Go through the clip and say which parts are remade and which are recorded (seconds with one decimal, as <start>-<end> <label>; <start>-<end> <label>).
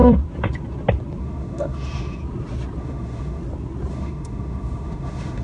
0.0-1.2 recorded; 1.2-2.2 remade; 2.2-2.8 recorded; 2.8-3.4 remade; 3.4-3.9 recorded; 3.9-5.4 remade